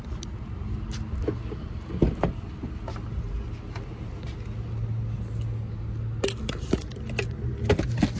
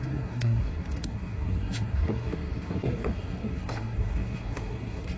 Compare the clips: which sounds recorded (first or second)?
first